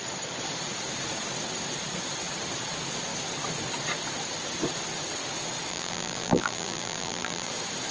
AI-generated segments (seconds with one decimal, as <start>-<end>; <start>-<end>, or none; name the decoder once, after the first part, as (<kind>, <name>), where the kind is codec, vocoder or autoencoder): 5.7-7.5 (vocoder, BigVGAN v2)